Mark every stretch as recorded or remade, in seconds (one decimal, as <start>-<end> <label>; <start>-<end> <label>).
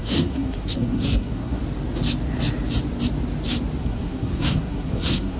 0.0-1.6 remade; 1.6-3.8 recorded; 3.8-5.4 remade